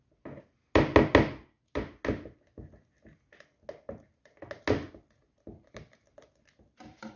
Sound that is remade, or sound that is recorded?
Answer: recorded